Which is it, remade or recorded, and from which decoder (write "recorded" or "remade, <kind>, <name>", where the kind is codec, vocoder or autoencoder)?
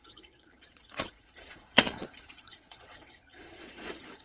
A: remade, vocoder, Vocos